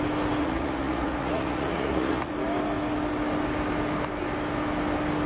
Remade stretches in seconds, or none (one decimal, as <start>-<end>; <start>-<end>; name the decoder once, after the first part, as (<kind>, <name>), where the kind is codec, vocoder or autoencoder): 0.4-2.3 (vocoder, Vocos)